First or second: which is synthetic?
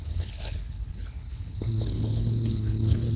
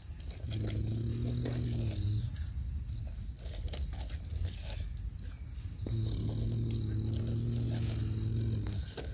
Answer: first